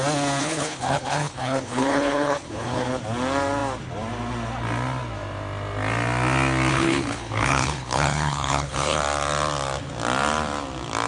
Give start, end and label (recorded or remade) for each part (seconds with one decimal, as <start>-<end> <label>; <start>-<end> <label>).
0.0-0.4 recorded; 0.4-2.9 remade; 2.9-6.7 recorded; 6.7-9.0 remade; 9.0-11.1 recorded